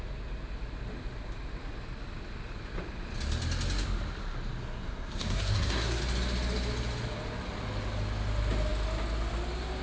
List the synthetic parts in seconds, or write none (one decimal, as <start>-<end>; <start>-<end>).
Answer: 4.6-6.0